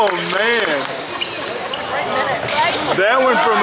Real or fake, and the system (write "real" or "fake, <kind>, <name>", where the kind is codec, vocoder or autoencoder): real